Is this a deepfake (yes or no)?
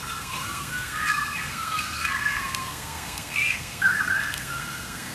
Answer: yes